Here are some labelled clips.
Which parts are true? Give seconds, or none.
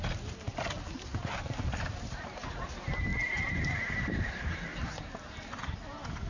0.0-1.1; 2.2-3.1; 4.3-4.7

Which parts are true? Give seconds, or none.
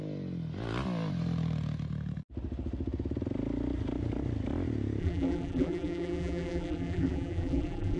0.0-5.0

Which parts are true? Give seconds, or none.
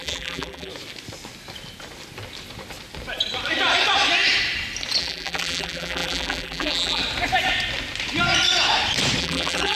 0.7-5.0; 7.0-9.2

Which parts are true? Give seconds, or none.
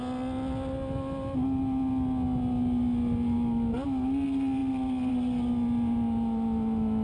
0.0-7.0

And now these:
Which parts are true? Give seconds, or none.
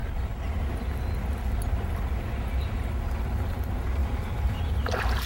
0.0-4.0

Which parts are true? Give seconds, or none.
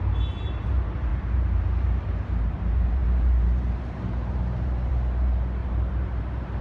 0.0-1.1; 4.9-5.6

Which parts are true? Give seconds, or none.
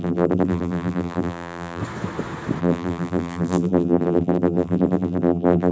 1.8-2.6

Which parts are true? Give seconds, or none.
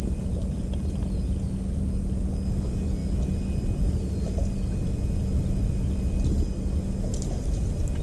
0.0-8.0